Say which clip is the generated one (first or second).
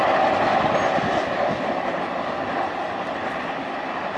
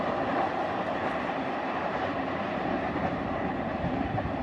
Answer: second